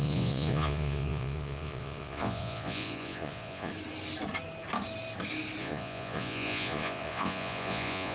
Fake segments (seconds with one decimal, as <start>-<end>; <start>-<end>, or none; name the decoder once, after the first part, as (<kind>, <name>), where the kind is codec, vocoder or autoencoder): 0.0-3.7 (vocoder, Vocos); 5.6-8.1